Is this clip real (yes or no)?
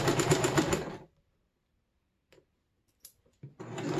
no